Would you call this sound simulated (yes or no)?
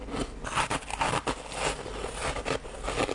no